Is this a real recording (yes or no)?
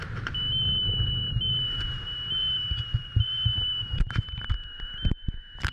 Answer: no